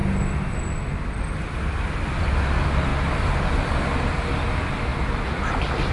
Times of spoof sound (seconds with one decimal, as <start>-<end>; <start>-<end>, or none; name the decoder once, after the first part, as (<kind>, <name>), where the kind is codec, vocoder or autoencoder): none